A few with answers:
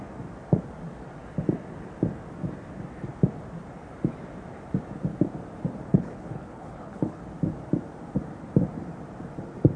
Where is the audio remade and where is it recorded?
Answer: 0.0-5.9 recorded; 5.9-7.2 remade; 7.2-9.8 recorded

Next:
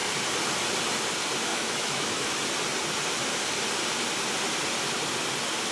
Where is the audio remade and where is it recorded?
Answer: 0.0-1.5 recorded; 1.5-2.3 remade; 2.3-5.7 recorded

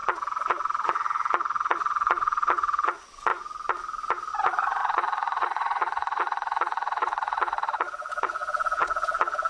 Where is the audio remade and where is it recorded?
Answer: 0.0-3.3 remade; 3.3-4.3 recorded; 4.3-9.5 remade

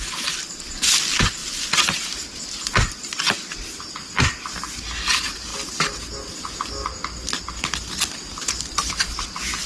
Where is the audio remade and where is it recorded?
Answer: 0.0-9.7 recorded

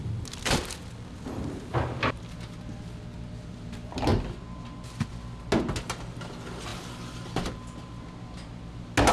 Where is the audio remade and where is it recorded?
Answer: 0.0-9.1 recorded

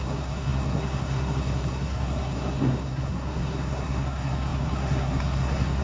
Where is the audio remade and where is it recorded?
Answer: 0.0-5.8 remade

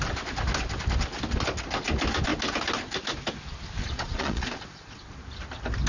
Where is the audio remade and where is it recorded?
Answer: 0.0-3.8 recorded; 3.8-5.1 remade; 5.1-5.9 recorded